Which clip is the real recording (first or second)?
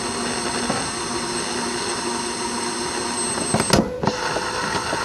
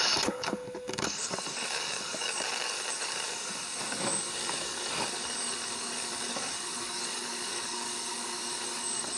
first